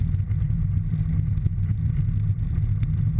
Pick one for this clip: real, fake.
real